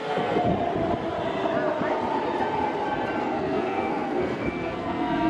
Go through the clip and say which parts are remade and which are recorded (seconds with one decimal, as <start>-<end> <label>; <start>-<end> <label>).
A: 0.0-0.5 remade; 0.5-3.2 recorded; 3.2-5.3 remade